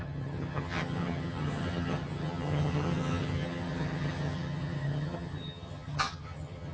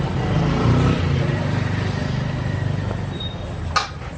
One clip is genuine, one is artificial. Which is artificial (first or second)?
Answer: first